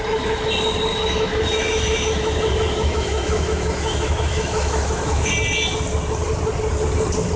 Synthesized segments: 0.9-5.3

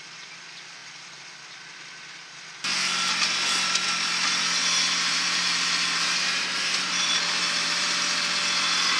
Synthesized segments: 4.6-8.4

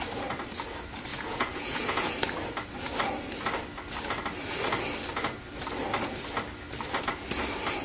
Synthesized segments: 1.1-2.1